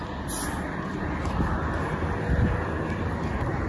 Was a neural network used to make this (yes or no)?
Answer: no